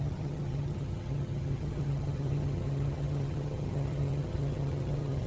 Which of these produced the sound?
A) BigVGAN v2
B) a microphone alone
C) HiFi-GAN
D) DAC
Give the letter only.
C